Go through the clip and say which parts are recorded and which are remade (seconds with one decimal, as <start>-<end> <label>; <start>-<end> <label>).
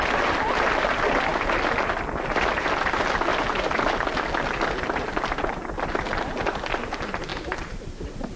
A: 0.0-7.3 recorded; 7.3-8.4 remade